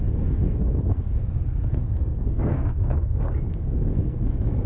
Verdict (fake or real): fake